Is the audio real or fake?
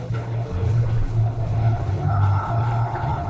fake